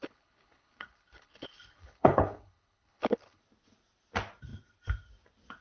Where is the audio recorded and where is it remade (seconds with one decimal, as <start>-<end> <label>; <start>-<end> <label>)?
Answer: 0.0-3.4 remade; 3.4-5.6 recorded